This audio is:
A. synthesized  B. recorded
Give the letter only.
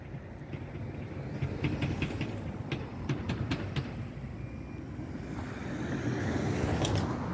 B